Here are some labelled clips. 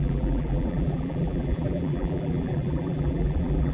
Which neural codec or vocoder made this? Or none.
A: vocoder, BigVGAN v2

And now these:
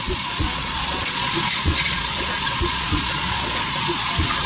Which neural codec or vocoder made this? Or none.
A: vocoder, Vocos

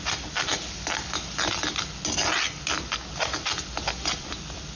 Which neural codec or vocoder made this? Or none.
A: none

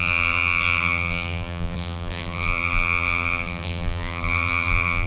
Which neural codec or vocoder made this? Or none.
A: vocoder, BigVGAN v2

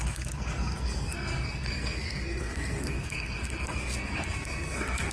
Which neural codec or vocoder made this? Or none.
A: codec, SNAC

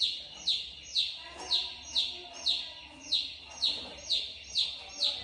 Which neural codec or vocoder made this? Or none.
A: none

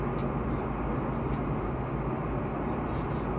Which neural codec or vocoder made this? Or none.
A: none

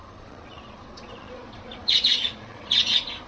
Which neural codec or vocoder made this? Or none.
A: vocoder, Vocos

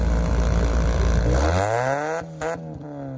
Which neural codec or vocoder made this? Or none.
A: none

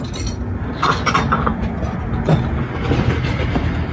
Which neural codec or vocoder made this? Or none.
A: none